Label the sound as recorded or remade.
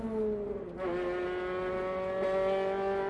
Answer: recorded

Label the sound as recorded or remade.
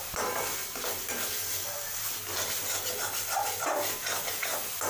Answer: recorded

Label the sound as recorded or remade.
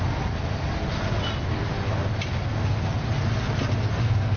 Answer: recorded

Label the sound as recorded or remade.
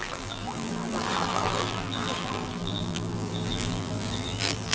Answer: remade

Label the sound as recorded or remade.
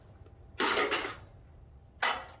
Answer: recorded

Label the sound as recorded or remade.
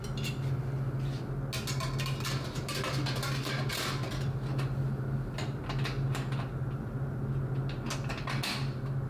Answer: recorded